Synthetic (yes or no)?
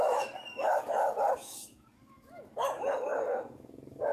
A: yes